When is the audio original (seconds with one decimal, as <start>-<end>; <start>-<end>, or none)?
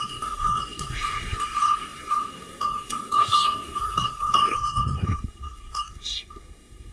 none